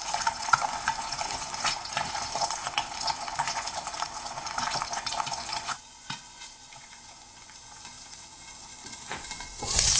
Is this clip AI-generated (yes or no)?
yes